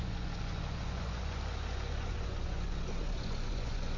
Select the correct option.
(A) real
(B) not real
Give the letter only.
B